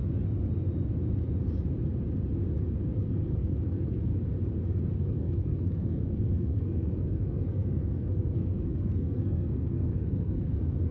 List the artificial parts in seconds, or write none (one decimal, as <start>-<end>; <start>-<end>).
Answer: 3.1-4.1; 5.0-10.9